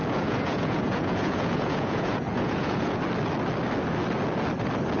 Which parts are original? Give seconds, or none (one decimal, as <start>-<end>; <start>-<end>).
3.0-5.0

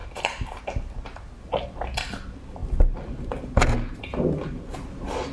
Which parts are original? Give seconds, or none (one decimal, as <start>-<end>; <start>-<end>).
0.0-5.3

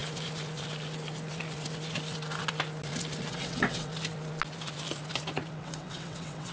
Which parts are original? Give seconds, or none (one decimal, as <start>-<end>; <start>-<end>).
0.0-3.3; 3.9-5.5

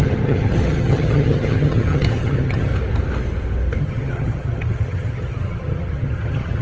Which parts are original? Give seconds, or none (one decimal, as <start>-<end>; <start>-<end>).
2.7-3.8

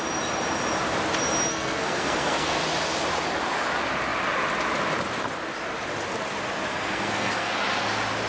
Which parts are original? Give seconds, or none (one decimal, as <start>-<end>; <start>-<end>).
0.0-1.5; 2.6-6.7; 7.5-8.3

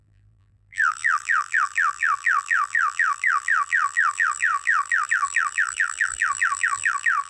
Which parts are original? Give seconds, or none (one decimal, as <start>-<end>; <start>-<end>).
none

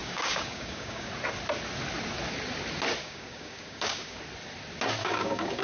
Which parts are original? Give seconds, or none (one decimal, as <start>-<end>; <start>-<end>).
1.1-3.0; 4.2-5.0

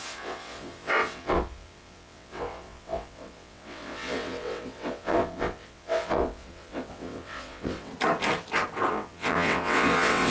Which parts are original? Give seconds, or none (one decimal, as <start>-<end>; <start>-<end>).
7.9-8.9